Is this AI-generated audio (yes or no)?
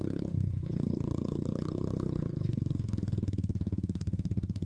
yes